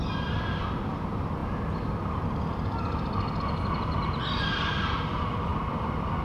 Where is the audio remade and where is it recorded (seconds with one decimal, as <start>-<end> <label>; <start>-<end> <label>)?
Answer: 0.0-1.4 remade; 1.4-3.4 recorded; 3.4-5.5 remade; 5.5-6.2 recorded